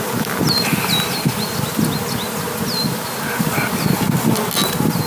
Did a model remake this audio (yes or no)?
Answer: no